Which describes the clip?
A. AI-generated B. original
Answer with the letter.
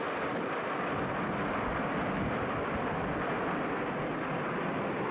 B